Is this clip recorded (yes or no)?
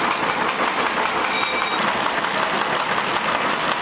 yes